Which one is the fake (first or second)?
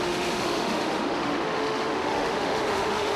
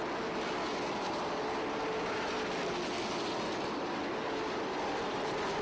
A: first